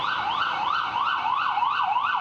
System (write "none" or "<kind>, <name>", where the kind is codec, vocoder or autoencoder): none